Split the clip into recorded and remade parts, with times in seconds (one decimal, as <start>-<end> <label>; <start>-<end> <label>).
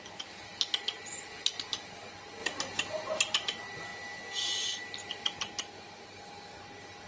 0.0-7.1 recorded